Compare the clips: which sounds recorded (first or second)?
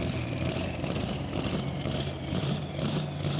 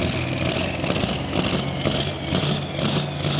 second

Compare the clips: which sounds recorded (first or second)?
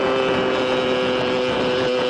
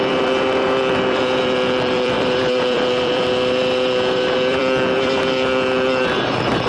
first